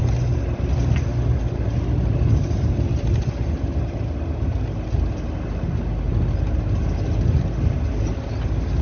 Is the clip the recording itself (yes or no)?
yes